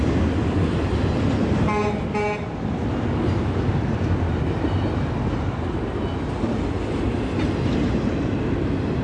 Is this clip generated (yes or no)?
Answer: no